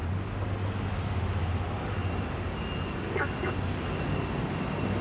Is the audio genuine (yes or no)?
yes